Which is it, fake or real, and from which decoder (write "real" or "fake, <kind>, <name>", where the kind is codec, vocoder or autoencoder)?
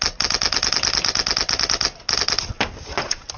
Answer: real